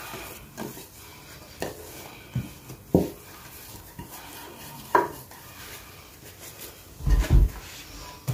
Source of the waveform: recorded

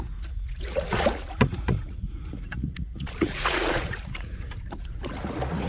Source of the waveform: remade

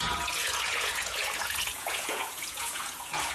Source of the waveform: remade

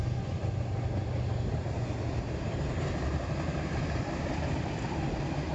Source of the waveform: recorded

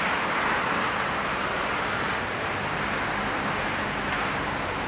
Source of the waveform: recorded